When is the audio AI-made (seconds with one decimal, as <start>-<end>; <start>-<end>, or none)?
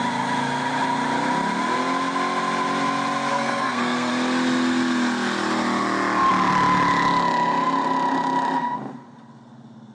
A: 3.3-4.1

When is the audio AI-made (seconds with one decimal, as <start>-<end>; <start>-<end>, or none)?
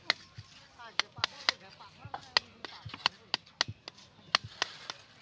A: none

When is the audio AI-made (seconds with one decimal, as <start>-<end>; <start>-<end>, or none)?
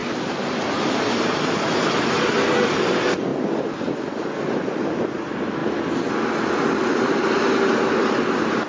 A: 1.4-3.3; 4.9-5.6; 6.5-8.7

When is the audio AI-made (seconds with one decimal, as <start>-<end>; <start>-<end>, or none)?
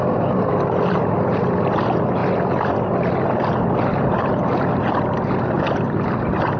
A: none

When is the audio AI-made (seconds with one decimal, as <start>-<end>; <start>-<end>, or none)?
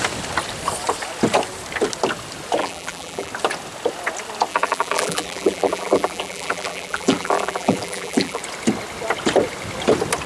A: 2.6-3.3; 4.5-8.4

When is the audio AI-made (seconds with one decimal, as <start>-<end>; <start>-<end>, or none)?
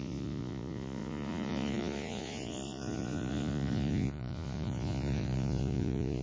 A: 0.0-6.2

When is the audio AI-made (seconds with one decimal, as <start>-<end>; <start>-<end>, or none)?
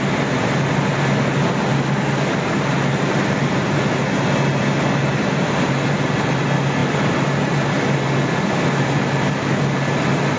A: 6.8-7.4